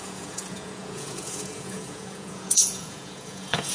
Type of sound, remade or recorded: remade